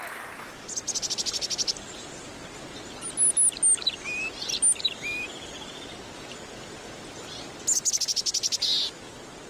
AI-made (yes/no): no